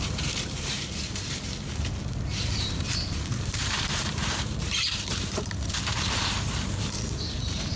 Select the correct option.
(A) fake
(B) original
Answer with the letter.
A